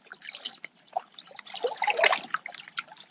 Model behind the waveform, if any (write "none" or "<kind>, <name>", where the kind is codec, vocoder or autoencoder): none